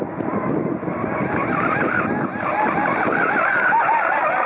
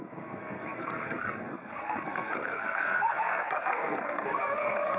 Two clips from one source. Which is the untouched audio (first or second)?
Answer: first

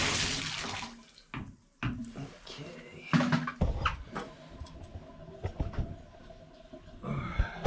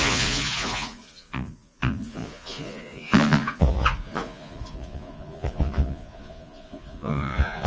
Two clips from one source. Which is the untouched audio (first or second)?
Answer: first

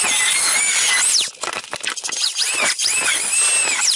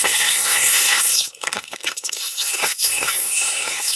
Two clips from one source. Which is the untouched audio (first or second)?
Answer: first